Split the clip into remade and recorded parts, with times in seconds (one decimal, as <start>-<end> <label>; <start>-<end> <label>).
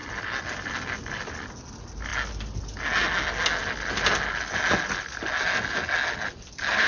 0.0-6.9 recorded